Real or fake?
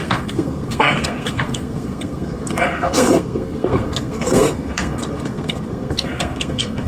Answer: fake